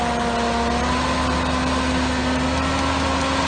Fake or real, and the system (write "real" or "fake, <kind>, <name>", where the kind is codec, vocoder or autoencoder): real